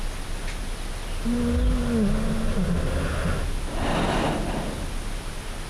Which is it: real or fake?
real